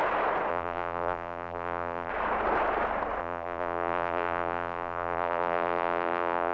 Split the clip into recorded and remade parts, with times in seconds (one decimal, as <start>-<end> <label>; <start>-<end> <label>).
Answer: 0.0-0.5 recorded; 0.5-2.1 remade; 2.1-3.2 recorded; 3.2-6.5 remade